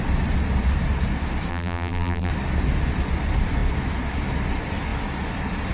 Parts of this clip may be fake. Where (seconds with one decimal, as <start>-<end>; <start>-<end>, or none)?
1.5-2.3